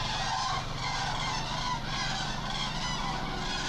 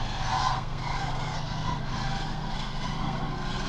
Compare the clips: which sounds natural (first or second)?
first